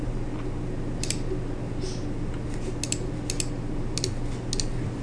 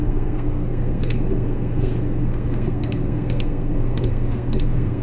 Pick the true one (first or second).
first